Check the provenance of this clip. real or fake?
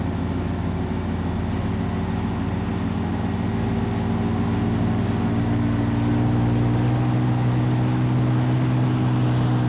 real